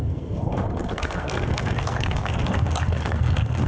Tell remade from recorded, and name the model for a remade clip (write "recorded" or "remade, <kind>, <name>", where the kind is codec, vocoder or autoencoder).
remade, codec, SNAC